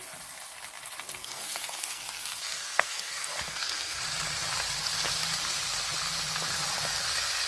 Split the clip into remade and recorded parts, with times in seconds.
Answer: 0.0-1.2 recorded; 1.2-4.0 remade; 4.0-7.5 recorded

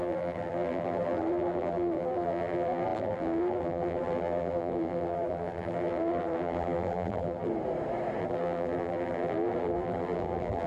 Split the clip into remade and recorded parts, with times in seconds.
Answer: 0.0-7.5 remade; 7.5-8.2 recorded; 8.2-10.7 remade

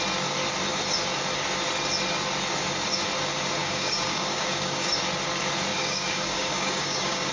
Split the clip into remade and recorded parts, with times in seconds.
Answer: 0.0-3.6 recorded; 3.6-4.9 remade; 4.9-5.7 recorded; 5.7-7.3 remade

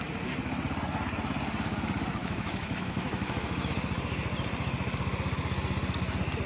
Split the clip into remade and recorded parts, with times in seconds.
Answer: 0.0-2.2 recorded; 2.2-3.7 remade; 3.7-6.5 recorded

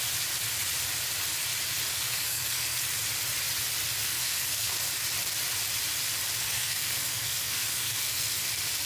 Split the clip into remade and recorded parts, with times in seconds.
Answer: 0.0-1.9 recorded; 1.9-2.8 remade; 2.8-4.0 recorded; 4.0-4.7 remade; 4.7-6.4 recorded; 6.4-8.5 remade; 8.5-8.9 recorded

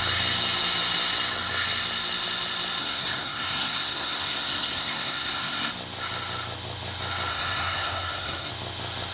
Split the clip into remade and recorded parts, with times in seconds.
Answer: 0.0-2.8 recorded; 2.8-5.7 remade; 5.7-7.3 recorded; 7.3-8.5 remade; 8.5-9.1 recorded

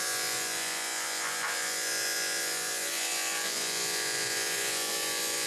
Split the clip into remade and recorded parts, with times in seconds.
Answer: 0.0-5.5 remade

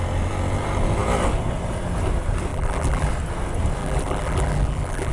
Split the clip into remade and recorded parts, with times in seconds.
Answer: 0.0-2.5 recorded; 2.5-3.1 remade; 3.1-3.8 recorded; 3.8-5.1 remade